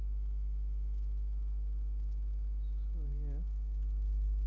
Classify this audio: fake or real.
real